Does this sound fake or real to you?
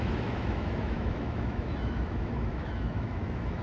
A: fake